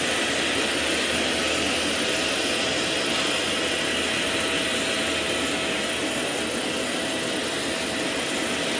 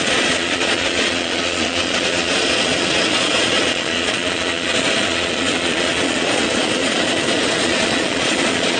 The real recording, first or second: first